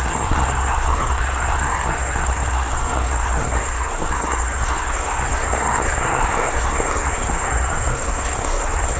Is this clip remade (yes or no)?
yes